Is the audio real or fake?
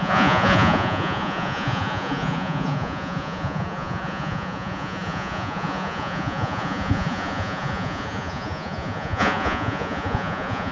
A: fake